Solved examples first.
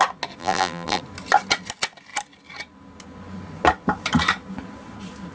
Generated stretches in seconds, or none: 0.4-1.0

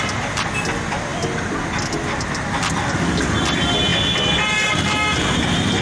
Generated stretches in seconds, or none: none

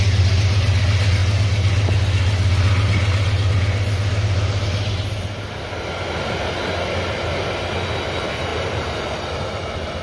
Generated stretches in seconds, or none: 8.5-10.0

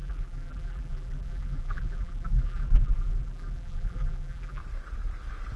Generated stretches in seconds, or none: 0.0-4.6

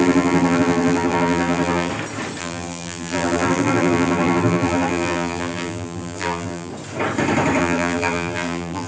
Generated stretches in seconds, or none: 0.0-1.9; 2.4-6.7; 7.6-8.9

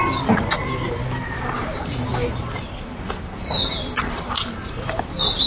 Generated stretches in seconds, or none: 0.0-0.8; 1.6-5.5